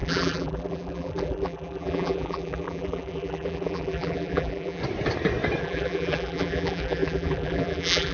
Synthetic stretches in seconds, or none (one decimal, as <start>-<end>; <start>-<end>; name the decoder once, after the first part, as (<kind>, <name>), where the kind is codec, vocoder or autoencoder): 0.0-4.8 (vocoder, BigVGAN v2); 5.6-8.1